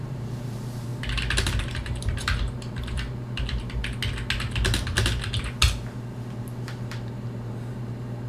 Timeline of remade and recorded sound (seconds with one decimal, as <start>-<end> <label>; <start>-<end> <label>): 0.0-0.9 remade; 0.9-1.6 recorded; 1.6-3.8 remade; 3.8-6.4 recorded; 6.4-8.3 remade